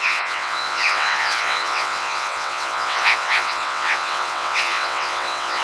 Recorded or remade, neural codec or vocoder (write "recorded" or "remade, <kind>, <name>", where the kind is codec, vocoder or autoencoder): remade, vocoder, WaveNeXt